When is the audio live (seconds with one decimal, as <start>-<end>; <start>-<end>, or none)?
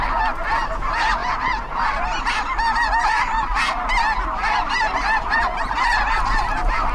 0.0-6.9